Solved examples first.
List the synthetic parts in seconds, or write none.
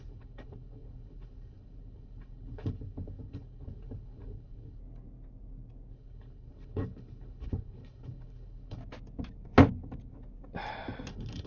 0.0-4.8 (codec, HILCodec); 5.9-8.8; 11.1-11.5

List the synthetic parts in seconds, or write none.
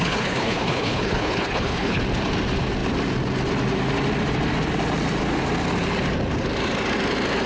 0.0-2.0 (codec, HILCodec)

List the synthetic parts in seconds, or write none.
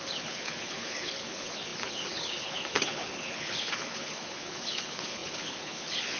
0.0-6.2 (codec, HILCodec)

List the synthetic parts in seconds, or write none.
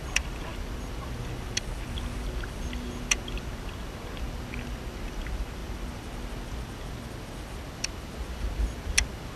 none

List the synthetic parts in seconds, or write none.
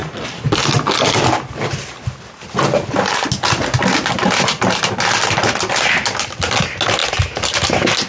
none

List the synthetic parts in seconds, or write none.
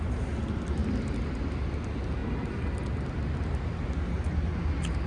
none